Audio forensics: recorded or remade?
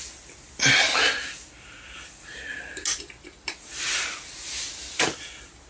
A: recorded